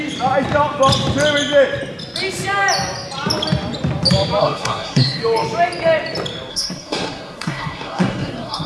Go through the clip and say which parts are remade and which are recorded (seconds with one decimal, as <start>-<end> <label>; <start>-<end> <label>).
0.0-4.4 recorded; 4.4-5.2 remade; 5.2-6.5 recorded; 6.5-8.7 remade